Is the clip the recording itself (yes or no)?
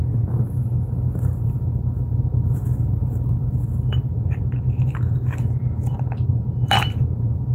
no